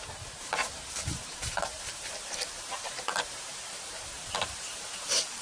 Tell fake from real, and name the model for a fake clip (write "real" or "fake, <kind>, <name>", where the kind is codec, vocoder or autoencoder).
fake, vocoder, BigVGAN v2